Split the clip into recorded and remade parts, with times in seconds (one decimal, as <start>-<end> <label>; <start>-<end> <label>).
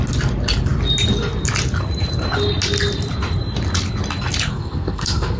0.0-4.5 recorded; 4.5-5.4 remade